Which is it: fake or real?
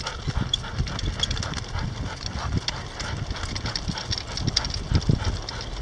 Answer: real